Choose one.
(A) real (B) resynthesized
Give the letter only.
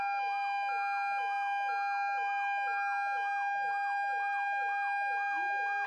A